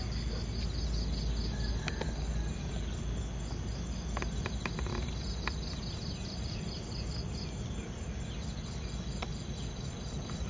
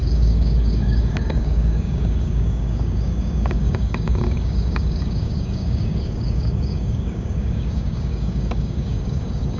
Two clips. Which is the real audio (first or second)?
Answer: first